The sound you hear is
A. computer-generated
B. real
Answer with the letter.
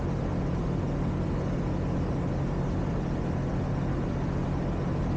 B